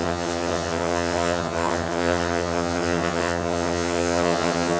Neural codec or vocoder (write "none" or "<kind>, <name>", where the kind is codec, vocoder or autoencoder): vocoder, HiFi-GAN